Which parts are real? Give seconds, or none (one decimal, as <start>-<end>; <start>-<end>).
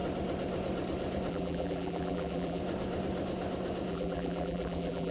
0.0-1.3; 2.6-3.9